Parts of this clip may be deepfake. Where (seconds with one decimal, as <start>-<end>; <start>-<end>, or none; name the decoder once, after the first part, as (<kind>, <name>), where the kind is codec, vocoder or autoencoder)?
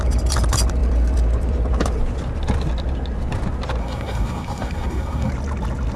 3.8-5.3 (codec, SNAC)